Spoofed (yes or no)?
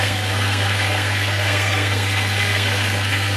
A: yes